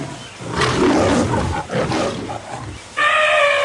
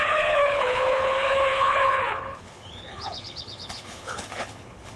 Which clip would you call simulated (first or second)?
second